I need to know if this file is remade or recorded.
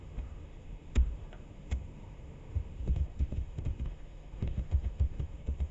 remade